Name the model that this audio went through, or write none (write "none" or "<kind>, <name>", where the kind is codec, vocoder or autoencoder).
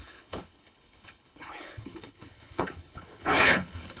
codec, HILCodec